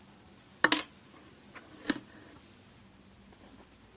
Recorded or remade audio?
recorded